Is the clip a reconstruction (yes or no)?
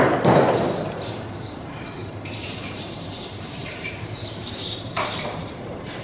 yes